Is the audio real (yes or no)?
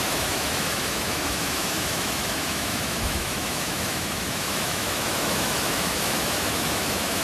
no